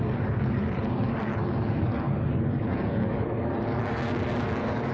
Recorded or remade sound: remade